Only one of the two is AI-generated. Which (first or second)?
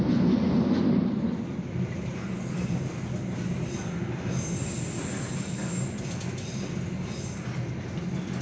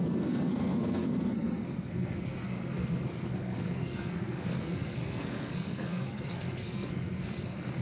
second